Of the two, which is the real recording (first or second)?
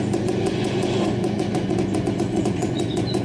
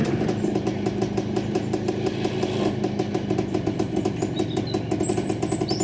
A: second